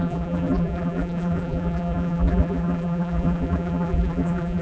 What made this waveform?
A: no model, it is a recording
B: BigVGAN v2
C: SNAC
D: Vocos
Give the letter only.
B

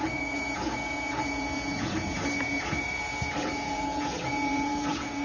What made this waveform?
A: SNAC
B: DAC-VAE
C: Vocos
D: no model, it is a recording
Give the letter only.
C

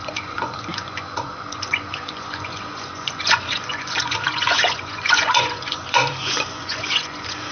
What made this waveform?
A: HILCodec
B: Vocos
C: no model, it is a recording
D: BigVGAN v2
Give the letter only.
B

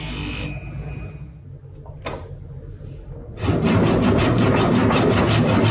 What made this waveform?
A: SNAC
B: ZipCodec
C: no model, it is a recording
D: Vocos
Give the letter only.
C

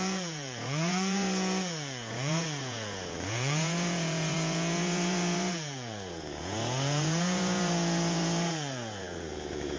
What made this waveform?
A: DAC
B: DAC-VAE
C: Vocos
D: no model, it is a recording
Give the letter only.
C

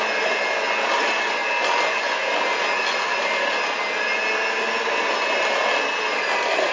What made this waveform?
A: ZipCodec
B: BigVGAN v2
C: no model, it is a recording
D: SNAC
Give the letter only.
C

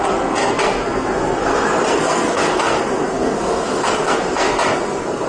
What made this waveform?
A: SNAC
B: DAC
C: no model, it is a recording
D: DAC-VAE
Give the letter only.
A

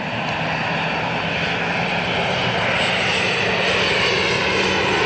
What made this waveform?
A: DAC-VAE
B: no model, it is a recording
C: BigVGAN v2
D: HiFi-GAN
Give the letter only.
B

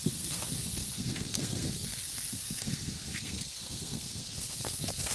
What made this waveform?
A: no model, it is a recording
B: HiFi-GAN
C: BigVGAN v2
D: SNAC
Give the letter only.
D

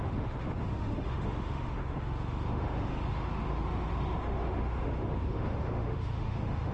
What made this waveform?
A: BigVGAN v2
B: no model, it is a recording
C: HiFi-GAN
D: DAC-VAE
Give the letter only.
D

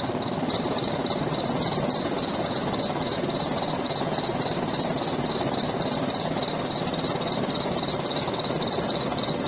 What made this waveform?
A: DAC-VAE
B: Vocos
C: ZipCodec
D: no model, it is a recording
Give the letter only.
D